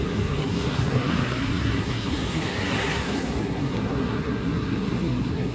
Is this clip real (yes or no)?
no